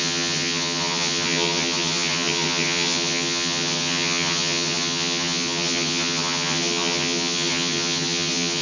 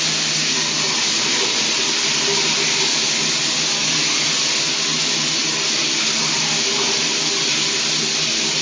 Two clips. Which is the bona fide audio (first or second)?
second